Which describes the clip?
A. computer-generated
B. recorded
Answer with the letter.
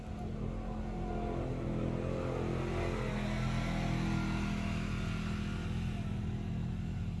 B